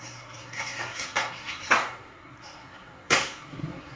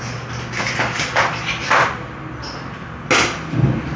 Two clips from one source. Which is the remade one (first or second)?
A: first